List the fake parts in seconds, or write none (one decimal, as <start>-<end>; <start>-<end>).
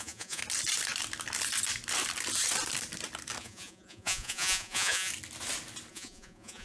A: 0.0-0.4; 3.4-5.1; 5.9-6.6